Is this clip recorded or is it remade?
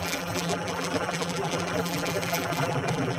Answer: remade